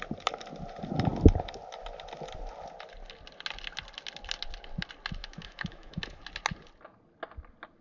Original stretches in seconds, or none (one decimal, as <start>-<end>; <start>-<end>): 0.0-5.2; 6.2-7.8